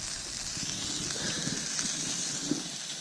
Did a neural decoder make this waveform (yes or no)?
no